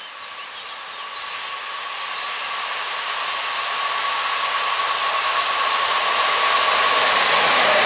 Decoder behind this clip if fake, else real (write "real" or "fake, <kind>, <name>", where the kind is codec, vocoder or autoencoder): real